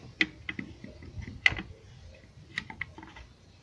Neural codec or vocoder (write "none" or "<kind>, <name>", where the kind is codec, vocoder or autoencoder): none